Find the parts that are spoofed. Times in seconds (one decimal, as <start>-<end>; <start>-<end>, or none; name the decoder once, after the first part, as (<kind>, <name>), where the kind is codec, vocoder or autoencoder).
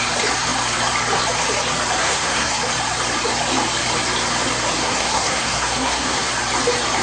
2.0-2.6 (codec, SNAC); 4.8-6.3